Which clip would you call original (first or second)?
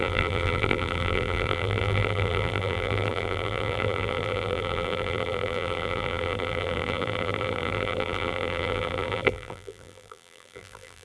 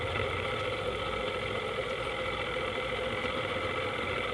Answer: second